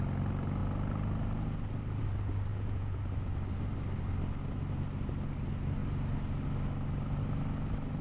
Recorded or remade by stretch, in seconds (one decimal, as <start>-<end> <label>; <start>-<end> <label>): 0.0-2.5 recorded; 2.5-3.0 remade; 3.0-8.0 recorded